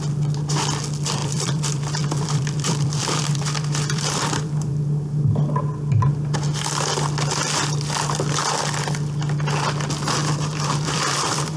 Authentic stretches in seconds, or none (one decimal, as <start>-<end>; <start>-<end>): 0.0-1.2; 4.7-10.2